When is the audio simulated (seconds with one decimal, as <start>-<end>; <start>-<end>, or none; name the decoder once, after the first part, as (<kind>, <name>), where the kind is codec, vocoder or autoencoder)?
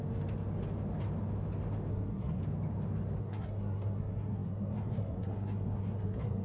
1.9-2.4 (codec, SNAC); 3.2-6.4